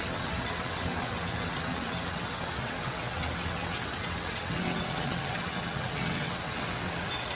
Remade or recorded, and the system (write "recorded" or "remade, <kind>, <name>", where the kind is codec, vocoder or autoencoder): remade, vocoder, WaveNeXt